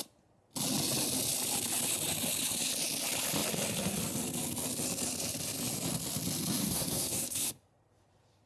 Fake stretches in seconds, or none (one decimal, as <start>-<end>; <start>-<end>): 6.6-7.5